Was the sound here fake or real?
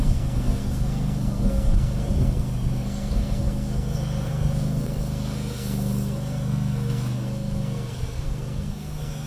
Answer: fake